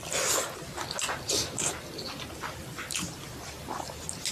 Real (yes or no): yes